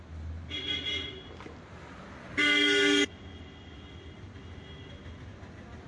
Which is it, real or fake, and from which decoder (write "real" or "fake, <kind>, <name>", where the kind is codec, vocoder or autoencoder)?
real